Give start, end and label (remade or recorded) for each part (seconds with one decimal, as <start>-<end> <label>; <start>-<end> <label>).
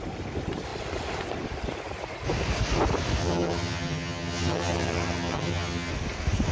0.0-3.2 recorded; 3.2-5.9 remade; 5.9-6.5 recorded